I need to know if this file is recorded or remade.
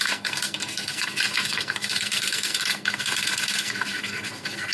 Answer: remade